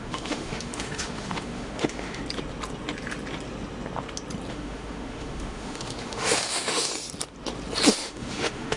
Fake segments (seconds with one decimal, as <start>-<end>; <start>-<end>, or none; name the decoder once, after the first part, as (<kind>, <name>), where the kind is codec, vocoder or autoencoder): 0.0-2.2 (autoencoder, DAC-VAE); 4.5-6.9; 7.9-8.8